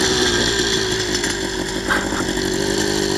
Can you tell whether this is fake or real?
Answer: real